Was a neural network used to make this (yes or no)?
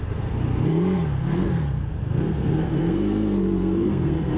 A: yes